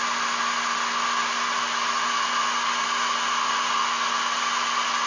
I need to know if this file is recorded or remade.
recorded